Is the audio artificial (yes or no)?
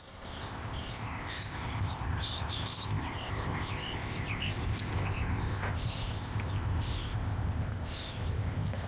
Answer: yes